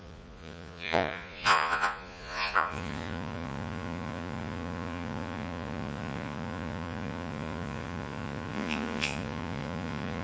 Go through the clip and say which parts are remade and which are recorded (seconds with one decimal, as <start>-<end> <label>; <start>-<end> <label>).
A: 0.0-10.2 remade